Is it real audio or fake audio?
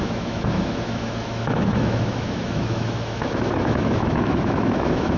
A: fake